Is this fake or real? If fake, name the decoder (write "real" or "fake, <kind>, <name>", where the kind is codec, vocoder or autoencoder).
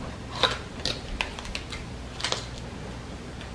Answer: real